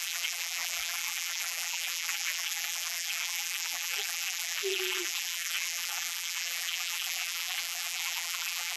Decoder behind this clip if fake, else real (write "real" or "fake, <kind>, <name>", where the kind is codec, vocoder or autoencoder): fake, vocoder, BigVGAN v2